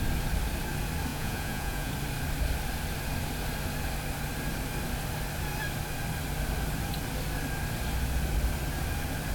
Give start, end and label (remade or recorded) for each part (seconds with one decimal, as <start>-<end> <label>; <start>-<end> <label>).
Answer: 0.0-1.1 recorded; 1.1-1.9 remade; 1.9-9.3 recorded